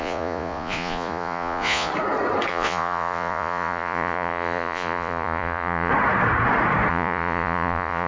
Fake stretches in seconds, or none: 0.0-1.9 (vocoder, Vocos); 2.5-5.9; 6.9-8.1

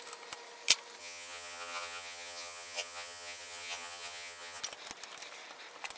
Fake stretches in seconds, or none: 1.0-4.6 (vocoder, HiFi-GAN)

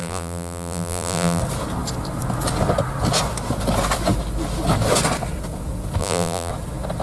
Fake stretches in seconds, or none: 0.0-1.4 (vocoder, BigVGAN v2); 6.0-6.5

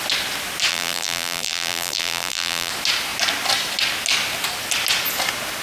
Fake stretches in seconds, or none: 0.7-2.7 (vocoder, BigVGAN v2)

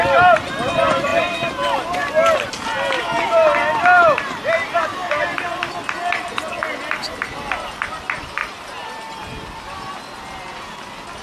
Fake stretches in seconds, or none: none

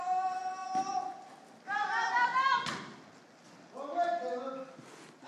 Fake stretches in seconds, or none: none